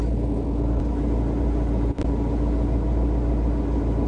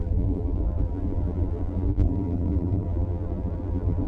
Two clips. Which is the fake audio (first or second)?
second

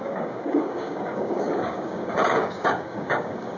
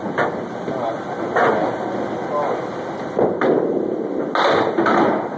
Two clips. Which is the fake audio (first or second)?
first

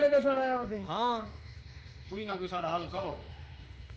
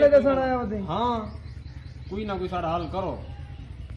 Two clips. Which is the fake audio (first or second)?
first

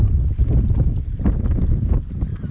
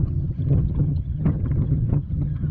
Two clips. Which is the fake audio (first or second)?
second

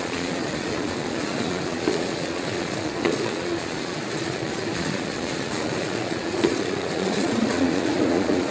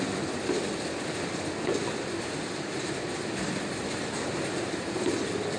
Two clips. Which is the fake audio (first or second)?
first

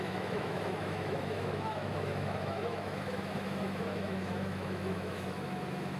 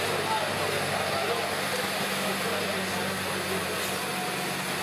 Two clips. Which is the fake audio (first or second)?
first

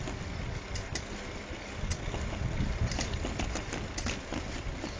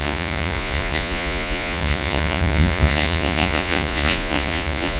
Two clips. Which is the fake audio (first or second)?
second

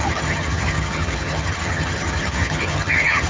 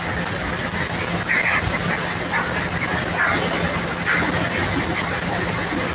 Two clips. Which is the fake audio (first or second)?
first